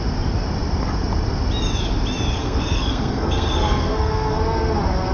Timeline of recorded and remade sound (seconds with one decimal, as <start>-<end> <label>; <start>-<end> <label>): 0.0-2.4 recorded; 2.4-4.4 remade; 4.4-5.1 recorded